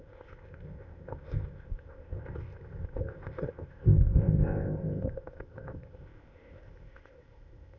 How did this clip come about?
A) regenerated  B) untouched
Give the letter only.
A